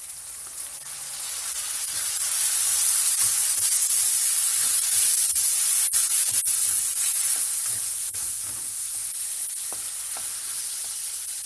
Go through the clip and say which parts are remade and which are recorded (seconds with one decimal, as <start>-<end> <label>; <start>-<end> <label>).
0.0-8.0 recorded; 8.0-9.1 remade; 9.1-11.5 recorded

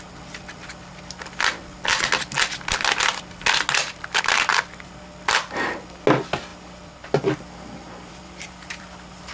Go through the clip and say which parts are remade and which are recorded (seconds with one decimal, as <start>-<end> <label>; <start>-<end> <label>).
0.0-6.5 recorded; 6.5-9.3 remade